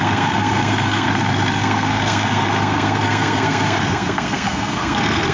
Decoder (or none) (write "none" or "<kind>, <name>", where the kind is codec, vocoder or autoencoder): codec, SNAC